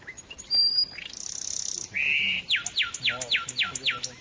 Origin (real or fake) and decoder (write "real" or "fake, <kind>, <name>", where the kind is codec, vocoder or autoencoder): real